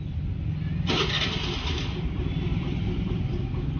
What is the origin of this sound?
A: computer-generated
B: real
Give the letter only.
B